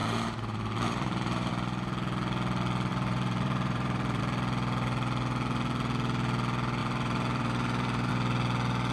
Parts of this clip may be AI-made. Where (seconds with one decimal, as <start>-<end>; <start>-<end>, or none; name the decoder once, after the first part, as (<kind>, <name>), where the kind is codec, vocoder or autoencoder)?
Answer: 0.0-1.5 (vocoder, BigVGAN v2); 2.9-4.2; 6.8-8.1